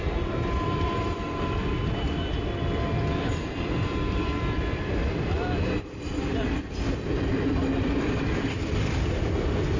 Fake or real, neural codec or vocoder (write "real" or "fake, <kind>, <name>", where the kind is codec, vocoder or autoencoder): fake, vocoder, BigVGAN v2